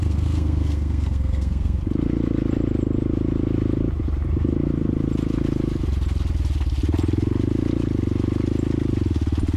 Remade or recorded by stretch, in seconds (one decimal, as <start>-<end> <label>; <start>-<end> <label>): 0.0-1.8 remade; 1.8-9.6 recorded